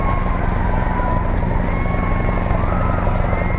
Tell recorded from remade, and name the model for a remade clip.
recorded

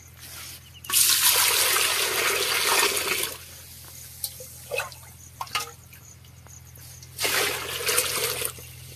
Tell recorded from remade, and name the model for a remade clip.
recorded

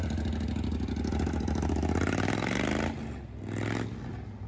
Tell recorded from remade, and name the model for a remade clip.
recorded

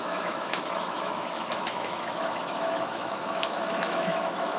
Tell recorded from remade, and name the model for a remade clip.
remade, autoencoder, DAC-VAE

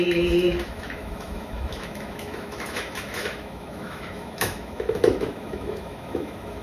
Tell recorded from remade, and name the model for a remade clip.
remade, autoencoder, DAC-VAE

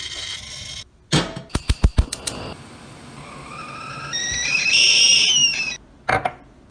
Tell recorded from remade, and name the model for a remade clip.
recorded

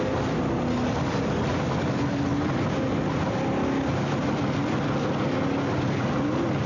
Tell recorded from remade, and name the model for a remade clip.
recorded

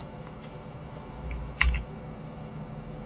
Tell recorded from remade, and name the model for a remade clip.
remade, autoencoder, DAC-VAE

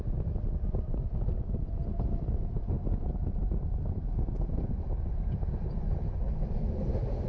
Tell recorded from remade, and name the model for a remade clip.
recorded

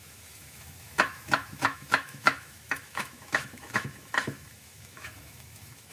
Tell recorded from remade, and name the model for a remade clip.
remade, autoencoder, DAC-VAE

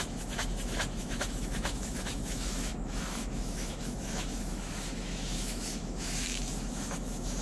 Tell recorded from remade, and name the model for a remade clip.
remade, autoencoder, DAC-VAE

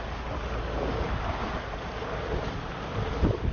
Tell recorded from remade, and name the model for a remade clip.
recorded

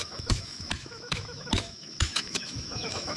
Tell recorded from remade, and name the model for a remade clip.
remade, autoencoder, DAC-VAE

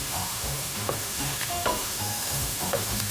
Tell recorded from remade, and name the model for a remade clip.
remade, autoencoder, DAC-VAE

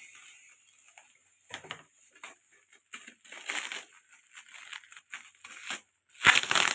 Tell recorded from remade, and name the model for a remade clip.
recorded